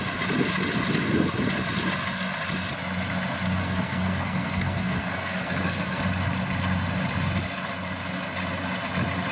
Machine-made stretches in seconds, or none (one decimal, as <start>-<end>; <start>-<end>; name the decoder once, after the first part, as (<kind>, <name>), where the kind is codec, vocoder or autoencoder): 3.6-6.0 (codec, SNAC)